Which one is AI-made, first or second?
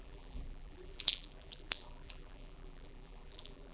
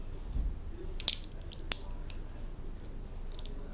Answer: first